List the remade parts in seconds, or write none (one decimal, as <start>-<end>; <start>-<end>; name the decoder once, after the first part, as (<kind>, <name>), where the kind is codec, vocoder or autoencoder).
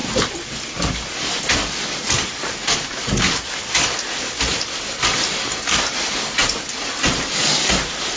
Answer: 0.0-2.6 (vocoder, BigVGAN v2); 6.0-6.4; 7.4-8.2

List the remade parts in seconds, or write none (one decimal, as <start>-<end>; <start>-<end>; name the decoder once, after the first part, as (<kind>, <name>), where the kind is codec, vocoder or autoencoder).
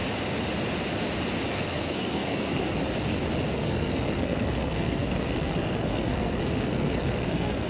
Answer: 1.5-2.8 (codec, SNAC); 3.5-7.7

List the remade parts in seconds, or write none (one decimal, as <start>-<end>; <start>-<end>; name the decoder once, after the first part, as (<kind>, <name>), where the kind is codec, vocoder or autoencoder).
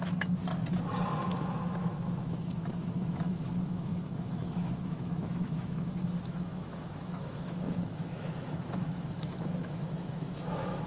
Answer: 0.0-0.4 (autoencoder, DAC-VAE); 1.3-10.9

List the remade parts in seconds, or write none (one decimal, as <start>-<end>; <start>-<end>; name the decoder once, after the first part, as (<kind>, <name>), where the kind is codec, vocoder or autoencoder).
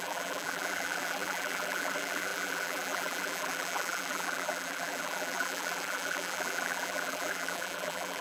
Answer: 0.0-8.2 (vocoder, BigVGAN v2)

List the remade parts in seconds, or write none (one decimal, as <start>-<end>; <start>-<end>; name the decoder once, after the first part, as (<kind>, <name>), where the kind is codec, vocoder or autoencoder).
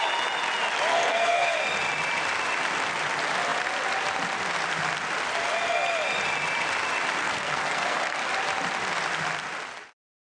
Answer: 0.9-1.6 (codec, SNAC); 7.2-8.3